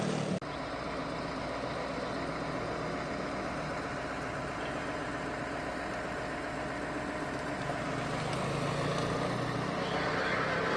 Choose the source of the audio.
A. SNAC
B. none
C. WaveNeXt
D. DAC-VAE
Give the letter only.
B